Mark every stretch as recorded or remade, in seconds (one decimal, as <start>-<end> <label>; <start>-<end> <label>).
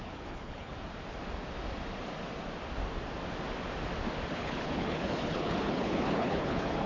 0.0-0.7 remade; 0.7-4.3 recorded; 4.3-6.9 remade